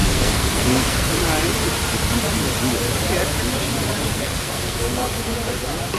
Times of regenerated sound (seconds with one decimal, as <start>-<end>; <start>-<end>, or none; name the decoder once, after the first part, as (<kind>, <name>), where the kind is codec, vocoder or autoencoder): 0.0-1.1 (codec, SNAC); 4.1-5.3